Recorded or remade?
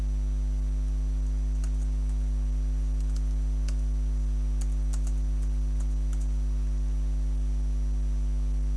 recorded